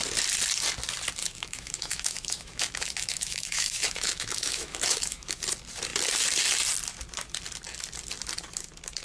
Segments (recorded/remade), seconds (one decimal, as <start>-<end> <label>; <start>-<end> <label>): 0.0-1.2 recorded; 1.2-5.4 remade; 5.4-9.0 recorded